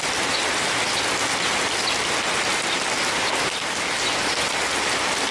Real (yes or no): yes